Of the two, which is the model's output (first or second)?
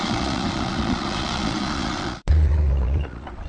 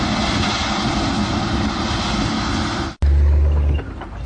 first